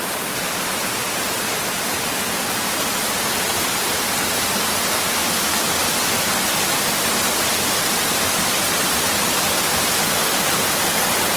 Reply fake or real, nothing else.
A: real